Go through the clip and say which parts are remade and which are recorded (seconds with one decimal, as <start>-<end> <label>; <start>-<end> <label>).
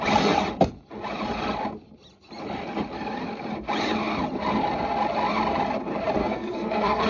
0.0-6.2 recorded; 6.2-7.1 remade